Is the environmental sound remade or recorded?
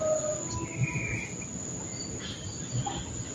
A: recorded